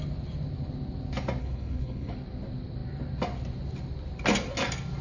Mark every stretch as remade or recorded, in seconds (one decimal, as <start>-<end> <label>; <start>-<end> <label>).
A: 0.0-1.4 recorded; 1.4-2.1 remade; 2.1-5.0 recorded